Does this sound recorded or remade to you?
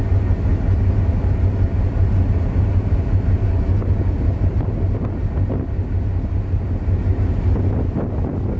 recorded